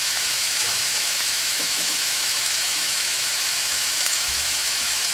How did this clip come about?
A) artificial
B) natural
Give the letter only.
A